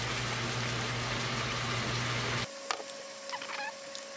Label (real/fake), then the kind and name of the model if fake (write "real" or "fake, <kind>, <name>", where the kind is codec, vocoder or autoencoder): real